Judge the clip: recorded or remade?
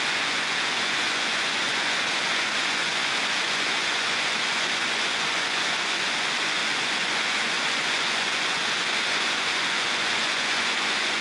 remade